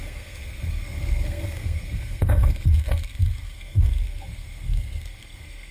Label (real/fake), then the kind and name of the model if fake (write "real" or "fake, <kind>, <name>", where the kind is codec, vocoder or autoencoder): fake, codec, SNAC